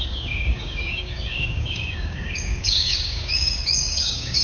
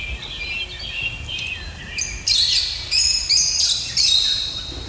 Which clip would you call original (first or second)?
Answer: second